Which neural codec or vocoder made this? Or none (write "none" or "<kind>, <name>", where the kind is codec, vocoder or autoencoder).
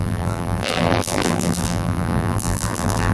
vocoder, BigVGAN v2